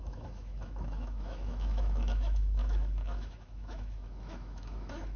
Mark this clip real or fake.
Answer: fake